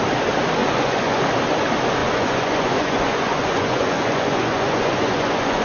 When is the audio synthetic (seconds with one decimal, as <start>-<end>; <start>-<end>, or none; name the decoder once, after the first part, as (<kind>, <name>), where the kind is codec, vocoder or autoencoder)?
0.6-1.2 (vocoder, Vocos); 2.0-5.6